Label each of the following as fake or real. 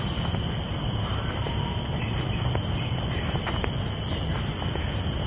real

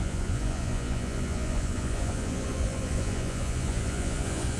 fake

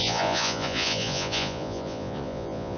fake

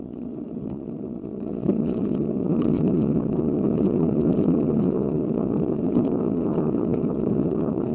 fake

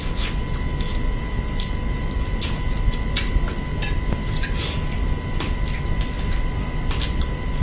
real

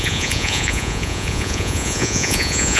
fake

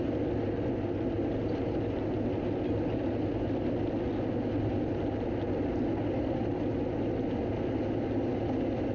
real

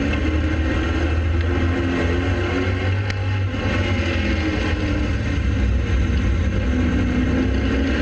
real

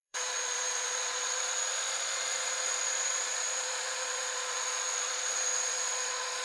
fake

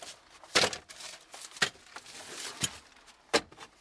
real